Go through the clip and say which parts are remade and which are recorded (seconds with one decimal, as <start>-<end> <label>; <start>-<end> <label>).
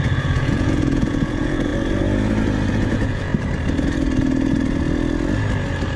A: 0.0-1.7 remade; 1.7-2.7 recorded; 2.7-3.3 remade; 3.3-6.0 recorded